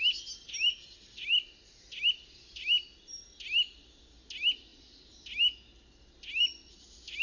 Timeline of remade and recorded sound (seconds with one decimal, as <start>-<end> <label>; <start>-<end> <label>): 0.0-7.2 recorded

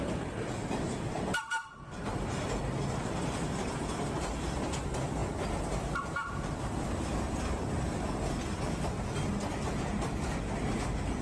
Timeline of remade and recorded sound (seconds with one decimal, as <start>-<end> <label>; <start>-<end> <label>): 0.0-1.6 recorded; 1.6-2.2 remade; 2.2-11.2 recorded

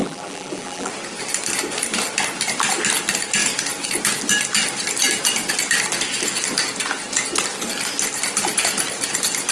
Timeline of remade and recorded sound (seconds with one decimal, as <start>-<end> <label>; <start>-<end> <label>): 0.0-0.9 remade; 0.9-9.5 recorded

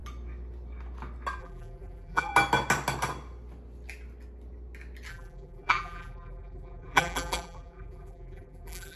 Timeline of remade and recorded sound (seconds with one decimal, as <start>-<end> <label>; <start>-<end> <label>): 0.0-1.4 recorded; 1.4-2.3 remade; 2.3-5.1 recorded; 5.1-9.0 remade